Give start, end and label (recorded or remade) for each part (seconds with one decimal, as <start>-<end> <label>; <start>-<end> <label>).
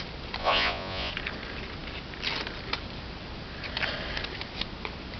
0.0-0.4 recorded; 0.4-1.1 remade; 1.1-5.2 recorded